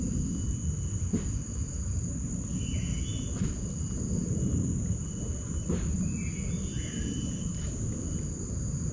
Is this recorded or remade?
recorded